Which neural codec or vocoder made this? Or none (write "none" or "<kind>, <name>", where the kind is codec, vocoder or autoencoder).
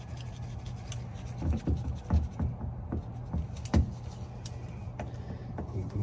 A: none